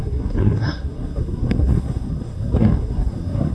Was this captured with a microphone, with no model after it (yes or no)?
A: no